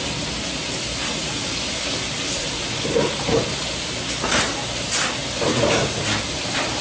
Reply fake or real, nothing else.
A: real